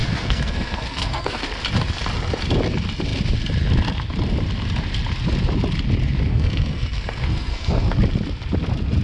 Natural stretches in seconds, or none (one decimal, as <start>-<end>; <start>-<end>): 1.5-6.3; 7.9-9.0